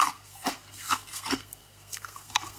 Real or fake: fake